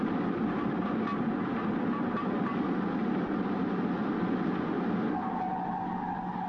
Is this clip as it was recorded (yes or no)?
yes